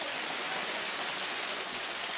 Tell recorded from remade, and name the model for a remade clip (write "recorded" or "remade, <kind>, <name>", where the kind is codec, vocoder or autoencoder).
remade, vocoder, Vocos